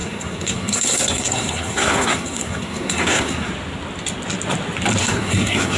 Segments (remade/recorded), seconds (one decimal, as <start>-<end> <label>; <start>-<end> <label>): 0.0-3.5 remade; 3.5-5.0 recorded; 5.0-5.8 remade